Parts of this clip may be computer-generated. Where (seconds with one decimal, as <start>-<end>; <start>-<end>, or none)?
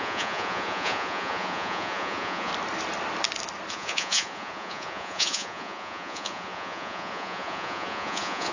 0.0-2.5; 3.7-8.5